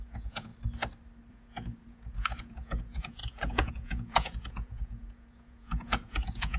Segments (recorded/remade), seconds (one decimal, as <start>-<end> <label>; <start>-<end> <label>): 0.0-0.5 remade; 0.5-1.3 recorded; 1.3-6.6 remade